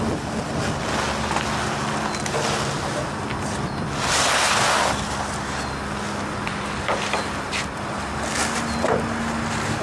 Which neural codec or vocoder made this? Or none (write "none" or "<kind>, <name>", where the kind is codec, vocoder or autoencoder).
none